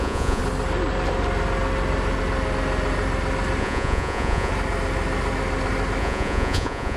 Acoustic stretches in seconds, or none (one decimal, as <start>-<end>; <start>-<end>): 0.4-3.6; 4.5-6.0